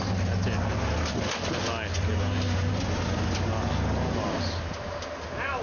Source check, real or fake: real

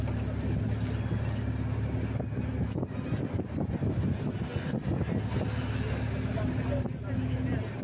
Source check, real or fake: real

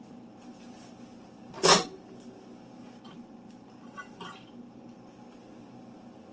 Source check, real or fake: real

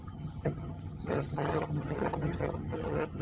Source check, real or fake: fake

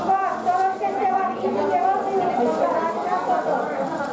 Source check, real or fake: real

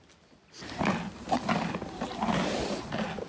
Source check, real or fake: real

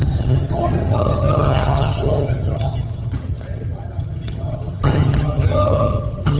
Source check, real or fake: fake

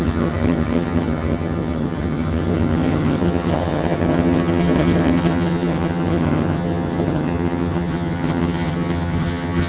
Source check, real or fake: fake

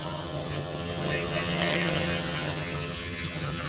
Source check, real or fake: fake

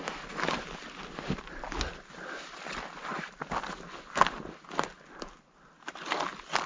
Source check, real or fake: real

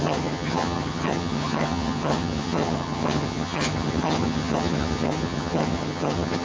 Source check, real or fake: fake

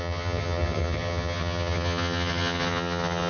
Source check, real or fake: fake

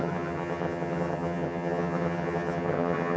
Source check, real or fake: fake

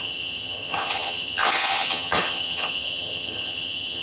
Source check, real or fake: fake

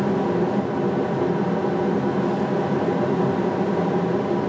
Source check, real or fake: real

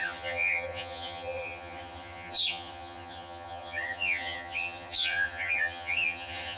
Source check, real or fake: fake